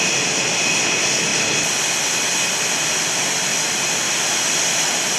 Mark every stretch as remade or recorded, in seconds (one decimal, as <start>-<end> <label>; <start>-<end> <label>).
0.0-5.2 recorded